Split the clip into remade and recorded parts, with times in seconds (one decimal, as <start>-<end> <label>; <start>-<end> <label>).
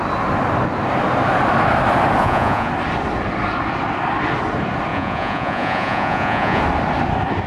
0.0-2.2 recorded; 2.2-2.7 remade; 2.7-4.9 recorded; 4.9-6.6 remade; 6.6-7.5 recorded